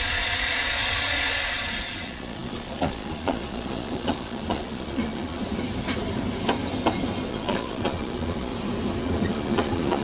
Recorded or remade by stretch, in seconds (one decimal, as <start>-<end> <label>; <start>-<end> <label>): 0.0-5.4 remade; 5.4-7.3 recorded; 7.3-8.5 remade; 8.5-9.0 recorded; 9.0-10.0 remade